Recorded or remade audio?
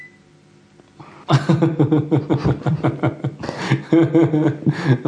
recorded